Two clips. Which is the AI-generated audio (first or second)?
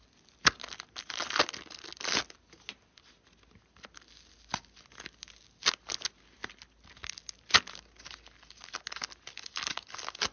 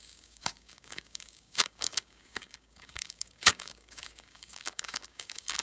second